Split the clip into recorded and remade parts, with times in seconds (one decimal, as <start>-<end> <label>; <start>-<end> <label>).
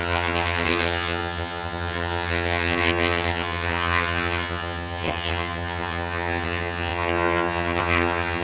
0.0-8.4 remade